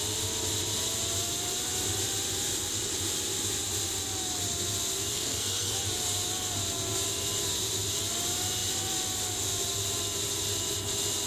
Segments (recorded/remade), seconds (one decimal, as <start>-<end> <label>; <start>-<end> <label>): 0.0-5.1 recorded; 5.1-5.8 remade; 5.8-11.3 recorded